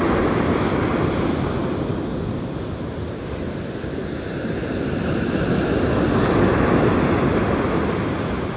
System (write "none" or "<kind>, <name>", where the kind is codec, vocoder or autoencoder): none